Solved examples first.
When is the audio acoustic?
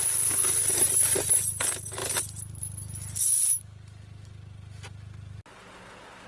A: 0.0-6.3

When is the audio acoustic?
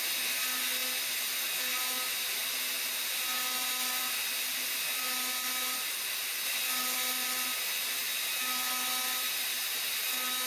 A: 0.0-10.5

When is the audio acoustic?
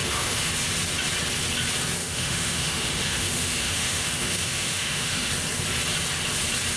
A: 0.5-2.0; 5.3-6.8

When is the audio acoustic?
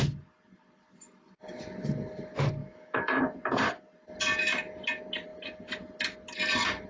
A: 0.0-2.6; 3.2-6.9